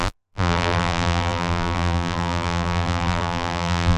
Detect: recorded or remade remade